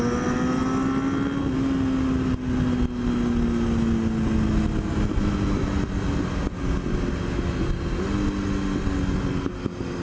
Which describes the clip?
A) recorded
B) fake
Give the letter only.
A